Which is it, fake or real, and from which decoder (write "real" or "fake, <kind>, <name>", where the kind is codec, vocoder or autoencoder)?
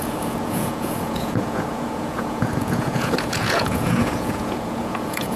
fake, vocoder, Vocos